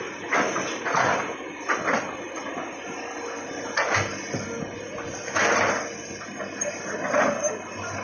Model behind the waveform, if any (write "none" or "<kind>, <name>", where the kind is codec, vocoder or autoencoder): none